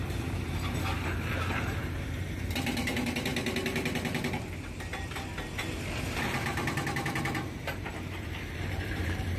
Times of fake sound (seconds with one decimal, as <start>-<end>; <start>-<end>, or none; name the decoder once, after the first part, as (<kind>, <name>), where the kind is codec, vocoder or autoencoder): 0.0-3.3 (vocoder, BigVGAN v2); 6.0-9.4